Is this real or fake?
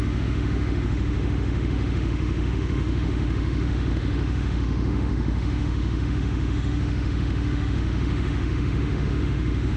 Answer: fake